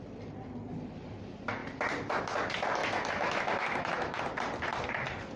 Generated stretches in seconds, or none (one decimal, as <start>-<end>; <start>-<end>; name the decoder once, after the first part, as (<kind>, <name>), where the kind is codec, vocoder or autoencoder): 2.8-4.2 (autoencoder, DAC-VAE)